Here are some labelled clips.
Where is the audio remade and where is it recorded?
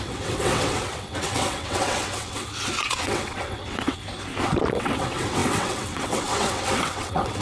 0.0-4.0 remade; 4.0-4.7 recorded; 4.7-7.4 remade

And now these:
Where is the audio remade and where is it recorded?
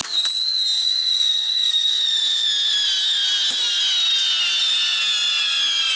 0.0-0.8 recorded; 0.8-1.9 remade; 1.9-6.0 recorded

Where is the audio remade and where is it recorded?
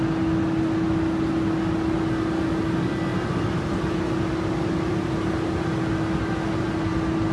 0.0-7.3 recorded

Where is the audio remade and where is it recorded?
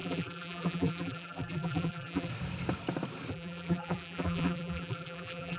0.0-2.3 remade; 2.3-3.3 recorded; 3.3-5.6 remade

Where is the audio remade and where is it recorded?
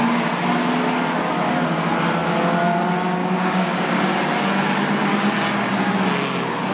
0.0-3.2 recorded; 3.2-4.0 remade; 4.0-6.7 recorded